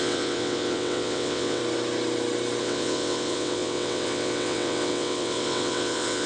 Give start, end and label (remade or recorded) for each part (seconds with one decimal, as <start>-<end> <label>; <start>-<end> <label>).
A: 0.0-1.6 remade; 1.6-2.6 recorded; 2.6-6.3 remade